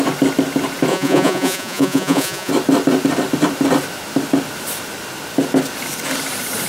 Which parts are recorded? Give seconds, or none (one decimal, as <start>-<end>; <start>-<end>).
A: 0.0-0.9; 2.5-6.7